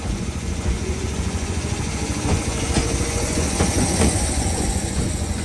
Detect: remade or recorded remade